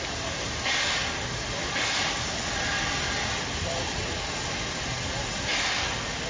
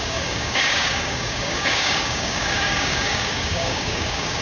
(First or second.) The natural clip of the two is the first